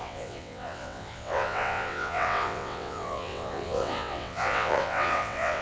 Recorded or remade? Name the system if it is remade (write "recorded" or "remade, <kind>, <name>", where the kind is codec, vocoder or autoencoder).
remade, vocoder, WaveNeXt